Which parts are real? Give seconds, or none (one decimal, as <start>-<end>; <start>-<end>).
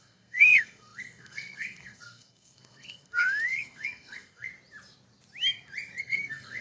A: 4.5-6.0